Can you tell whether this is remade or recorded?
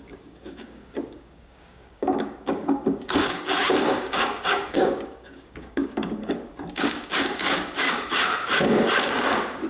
remade